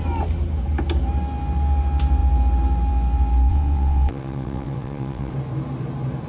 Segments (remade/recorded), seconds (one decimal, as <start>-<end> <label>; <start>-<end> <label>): 0.0-3.5 recorded; 3.5-5.3 remade; 5.3-6.3 recorded